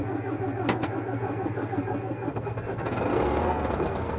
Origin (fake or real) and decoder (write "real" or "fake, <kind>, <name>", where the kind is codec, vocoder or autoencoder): fake, codec, SNAC